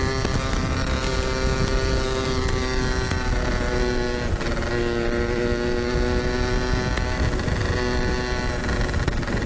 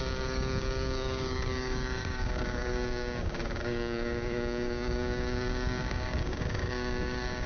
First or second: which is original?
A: first